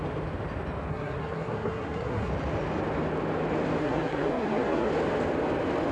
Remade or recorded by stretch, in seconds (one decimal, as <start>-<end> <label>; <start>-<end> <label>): 0.0-0.9 recorded; 0.9-2.3 remade; 2.3-3.8 recorded; 3.8-4.9 remade; 4.9-5.9 recorded